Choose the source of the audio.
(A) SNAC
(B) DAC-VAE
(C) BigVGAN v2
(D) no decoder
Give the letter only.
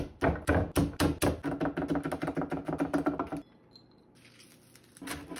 D